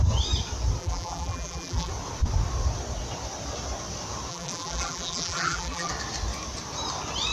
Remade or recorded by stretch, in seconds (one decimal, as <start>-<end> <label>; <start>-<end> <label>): 0.0-0.8 recorded; 0.8-1.9 remade; 1.9-4.3 recorded; 4.3-5.9 remade; 5.9-7.3 recorded